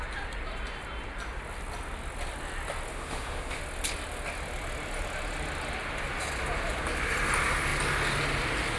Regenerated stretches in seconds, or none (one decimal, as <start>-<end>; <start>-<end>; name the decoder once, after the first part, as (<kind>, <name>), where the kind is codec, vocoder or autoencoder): 2.9-3.6 (autoencoder, DAC-VAE)